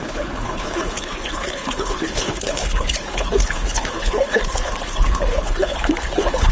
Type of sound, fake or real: fake